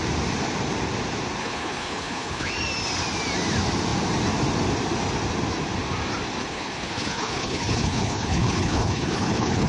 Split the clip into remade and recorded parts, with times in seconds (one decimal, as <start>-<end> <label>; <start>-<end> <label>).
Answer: 0.0-1.4 recorded; 1.4-2.5 remade; 2.5-6.4 recorded; 6.4-9.7 remade